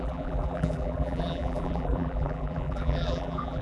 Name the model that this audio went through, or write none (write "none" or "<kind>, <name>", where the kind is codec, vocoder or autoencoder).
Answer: vocoder, BigVGAN v2